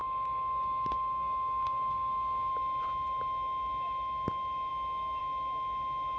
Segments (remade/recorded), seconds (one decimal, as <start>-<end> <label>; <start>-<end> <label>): 0.0-2.5 remade; 2.5-6.2 recorded